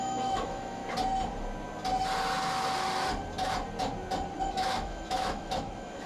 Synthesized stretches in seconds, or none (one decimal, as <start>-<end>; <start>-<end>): 0.0-0.8; 4.5-6.1